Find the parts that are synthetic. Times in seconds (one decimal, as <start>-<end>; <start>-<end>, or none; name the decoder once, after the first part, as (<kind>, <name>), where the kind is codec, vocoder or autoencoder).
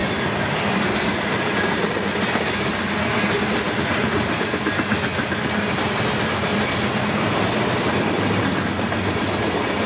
none